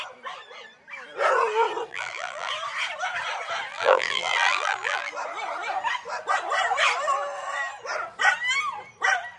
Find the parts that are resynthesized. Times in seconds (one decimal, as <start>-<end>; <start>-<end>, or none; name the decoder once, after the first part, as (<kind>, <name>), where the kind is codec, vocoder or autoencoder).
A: 1.9-2.5 (vocoder, BigVGAN v2); 3.7-5.1